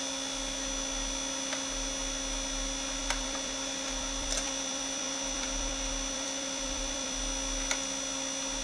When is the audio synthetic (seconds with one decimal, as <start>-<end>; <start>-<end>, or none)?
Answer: 3.0-7.2